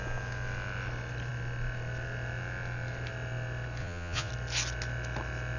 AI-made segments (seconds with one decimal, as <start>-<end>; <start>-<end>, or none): 3.8-4.3